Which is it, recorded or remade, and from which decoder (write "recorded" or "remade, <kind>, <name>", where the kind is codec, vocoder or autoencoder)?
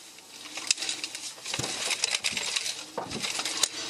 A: recorded